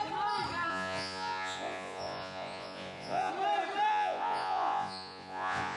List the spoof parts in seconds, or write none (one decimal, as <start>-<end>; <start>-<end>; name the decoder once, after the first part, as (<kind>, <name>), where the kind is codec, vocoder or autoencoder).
0.7-3.3 (vocoder, Vocos); 3.9-5.8